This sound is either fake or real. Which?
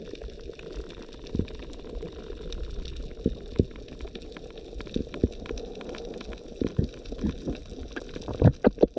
real